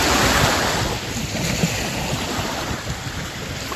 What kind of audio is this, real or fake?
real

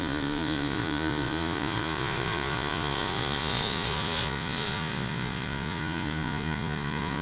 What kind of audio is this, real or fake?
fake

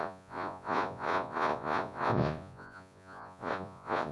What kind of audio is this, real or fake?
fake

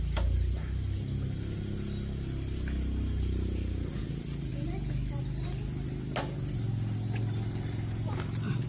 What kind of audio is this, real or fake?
real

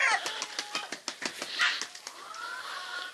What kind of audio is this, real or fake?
real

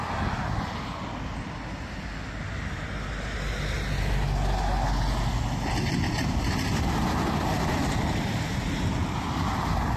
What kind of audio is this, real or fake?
real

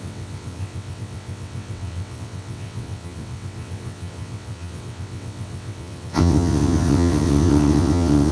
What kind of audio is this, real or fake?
fake